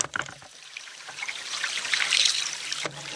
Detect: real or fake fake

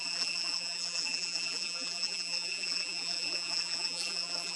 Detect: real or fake fake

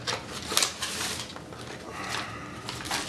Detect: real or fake real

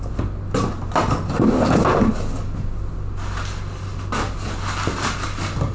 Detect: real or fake real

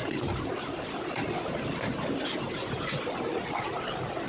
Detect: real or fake real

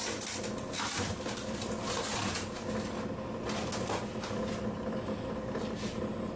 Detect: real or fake real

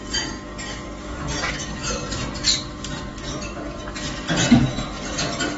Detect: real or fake real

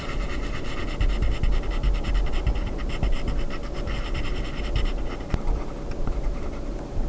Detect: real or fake fake